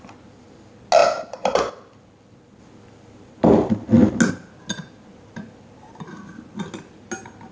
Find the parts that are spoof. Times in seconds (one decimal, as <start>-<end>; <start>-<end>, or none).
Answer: none